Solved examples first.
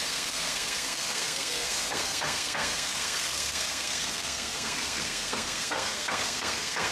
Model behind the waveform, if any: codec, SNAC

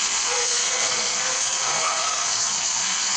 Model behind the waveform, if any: codec, SNAC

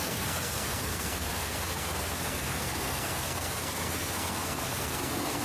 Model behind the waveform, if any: codec, SNAC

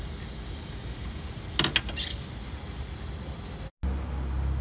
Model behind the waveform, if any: none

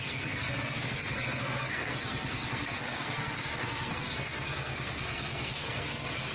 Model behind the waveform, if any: codec, SNAC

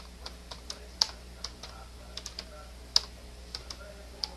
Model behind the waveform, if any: none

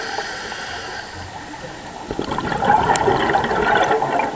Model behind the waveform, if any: none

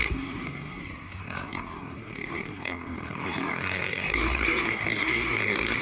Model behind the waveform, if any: codec, SNAC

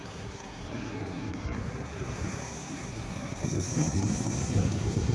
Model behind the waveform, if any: codec, SNAC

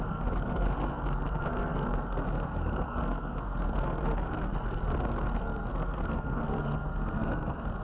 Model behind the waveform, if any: codec, SNAC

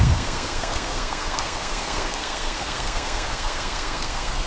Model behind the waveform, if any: codec, SNAC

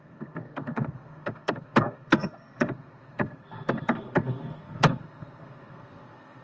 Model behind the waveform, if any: codec, SNAC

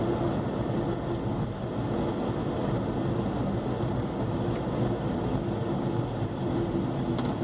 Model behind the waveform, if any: none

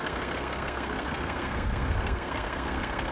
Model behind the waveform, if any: codec, SNAC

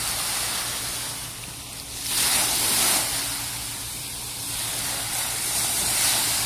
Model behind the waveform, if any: none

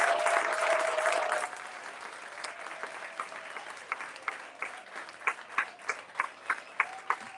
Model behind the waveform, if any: none